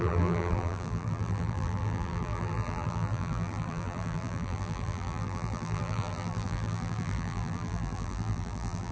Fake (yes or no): yes